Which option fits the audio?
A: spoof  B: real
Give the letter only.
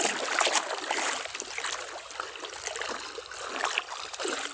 B